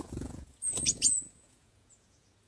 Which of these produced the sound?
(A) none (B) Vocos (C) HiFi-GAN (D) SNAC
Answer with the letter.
B